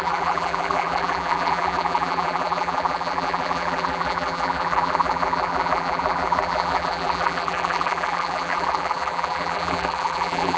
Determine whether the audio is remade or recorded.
remade